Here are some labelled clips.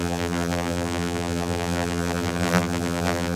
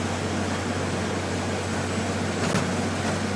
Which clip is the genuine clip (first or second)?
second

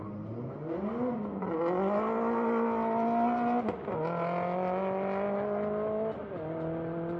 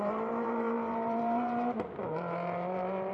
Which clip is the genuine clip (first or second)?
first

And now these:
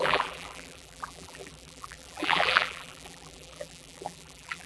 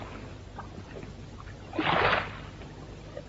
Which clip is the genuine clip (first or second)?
second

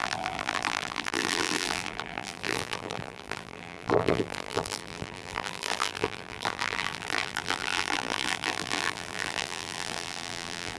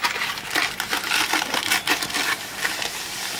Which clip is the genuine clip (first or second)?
second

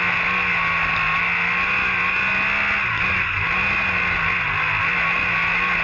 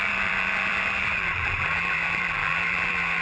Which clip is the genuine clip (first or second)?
first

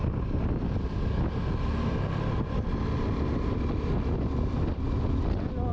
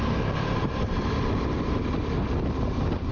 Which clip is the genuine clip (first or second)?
first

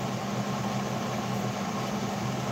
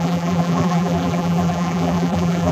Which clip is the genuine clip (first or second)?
first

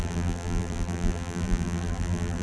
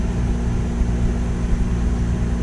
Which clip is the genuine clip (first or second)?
second